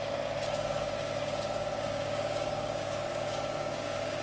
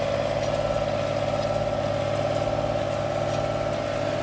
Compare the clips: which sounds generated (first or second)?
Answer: first